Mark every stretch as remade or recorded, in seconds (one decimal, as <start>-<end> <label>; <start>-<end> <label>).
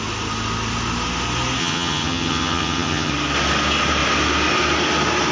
0.0-1.6 recorded; 1.6-3.1 remade; 3.1-5.3 recorded